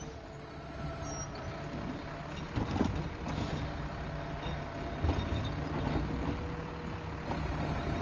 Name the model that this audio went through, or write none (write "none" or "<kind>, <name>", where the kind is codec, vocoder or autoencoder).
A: none